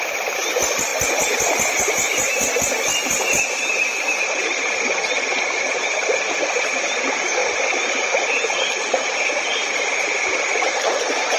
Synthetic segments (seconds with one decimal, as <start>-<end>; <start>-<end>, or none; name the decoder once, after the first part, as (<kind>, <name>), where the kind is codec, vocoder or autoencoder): 7.4-9.4 (vocoder, BigVGAN v2)